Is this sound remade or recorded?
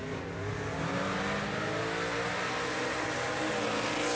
recorded